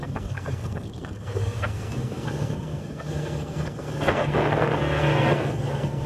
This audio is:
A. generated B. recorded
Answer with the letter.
A